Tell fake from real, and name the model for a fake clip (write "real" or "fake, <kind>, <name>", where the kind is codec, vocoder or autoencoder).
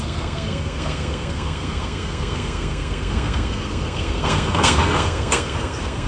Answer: fake, codec, SNAC